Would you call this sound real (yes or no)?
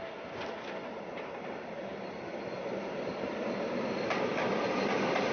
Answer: yes